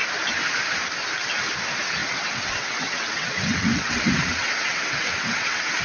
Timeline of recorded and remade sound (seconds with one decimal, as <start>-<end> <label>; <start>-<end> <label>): 0.0-2.0 recorded; 2.0-5.8 remade